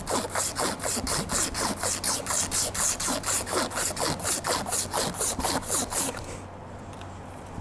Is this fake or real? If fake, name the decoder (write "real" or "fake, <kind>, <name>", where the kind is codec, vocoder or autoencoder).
real